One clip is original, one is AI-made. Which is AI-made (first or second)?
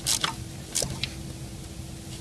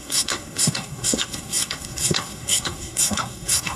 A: second